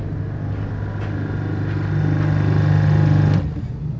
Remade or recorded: recorded